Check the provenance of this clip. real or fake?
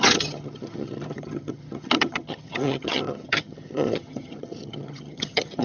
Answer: fake